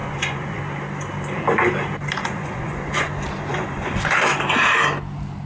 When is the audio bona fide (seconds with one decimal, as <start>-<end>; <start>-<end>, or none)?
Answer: 0.6-2.2; 3.1-3.5; 4.3-5.5